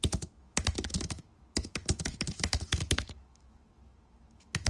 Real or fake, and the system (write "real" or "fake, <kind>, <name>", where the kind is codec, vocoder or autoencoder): fake, autoencoder, DAC-VAE